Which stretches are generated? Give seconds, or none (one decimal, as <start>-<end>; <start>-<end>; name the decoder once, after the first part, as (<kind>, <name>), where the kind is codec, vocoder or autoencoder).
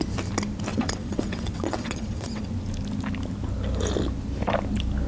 0.7-2.4 (vocoder, WaveNeXt)